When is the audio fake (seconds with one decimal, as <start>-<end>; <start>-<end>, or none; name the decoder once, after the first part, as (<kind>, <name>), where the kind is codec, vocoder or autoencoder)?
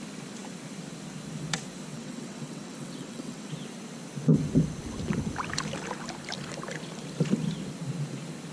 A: 1.9-3.5 (vocoder, WaveNeXt)